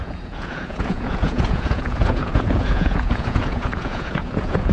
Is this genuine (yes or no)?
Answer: no